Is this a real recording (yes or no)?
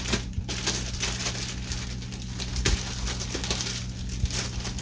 yes